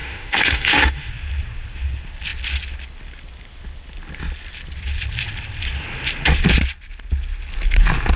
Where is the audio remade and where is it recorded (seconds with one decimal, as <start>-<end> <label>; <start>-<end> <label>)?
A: 0.0-1.1 remade; 1.1-8.2 recorded